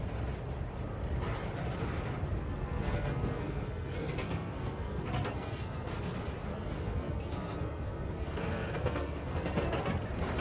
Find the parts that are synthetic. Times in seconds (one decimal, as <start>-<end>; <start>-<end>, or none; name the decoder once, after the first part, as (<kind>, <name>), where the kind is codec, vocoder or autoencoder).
2.4-5.9 (codec, SNAC); 6.5-9.9